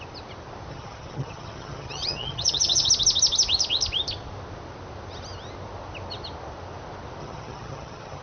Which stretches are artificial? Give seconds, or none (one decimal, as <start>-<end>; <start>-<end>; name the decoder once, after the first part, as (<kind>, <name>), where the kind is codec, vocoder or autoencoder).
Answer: 0.7-2.9 (vocoder, HiFi-GAN); 7.2-8.2